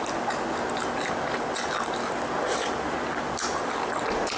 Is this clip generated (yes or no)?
no